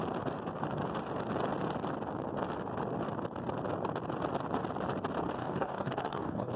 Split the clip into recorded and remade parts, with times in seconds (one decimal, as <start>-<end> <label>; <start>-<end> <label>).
0.0-5.4 recorded; 5.4-6.6 remade